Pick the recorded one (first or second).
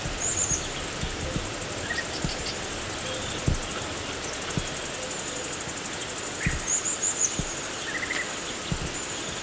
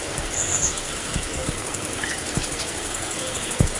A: first